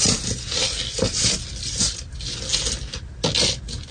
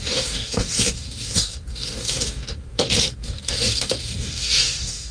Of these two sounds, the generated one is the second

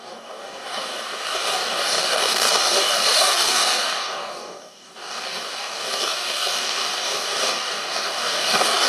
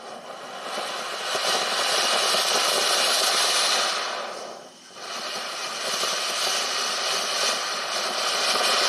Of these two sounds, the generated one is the first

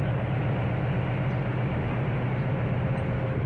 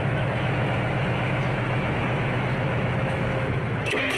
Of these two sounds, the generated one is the second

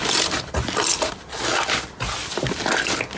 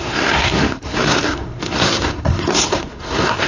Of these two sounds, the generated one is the second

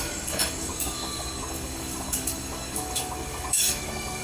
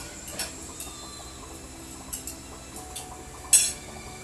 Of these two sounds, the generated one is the first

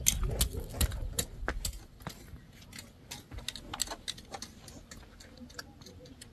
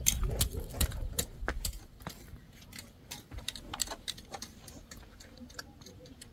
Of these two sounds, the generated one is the second